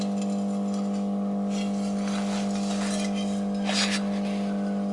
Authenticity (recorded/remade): recorded